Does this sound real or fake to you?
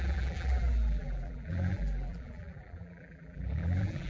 fake